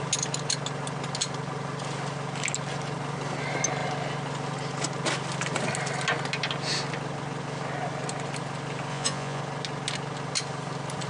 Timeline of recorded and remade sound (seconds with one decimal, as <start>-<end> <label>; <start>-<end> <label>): 0.0-8.9 recorded; 8.9-9.4 remade; 9.4-11.1 recorded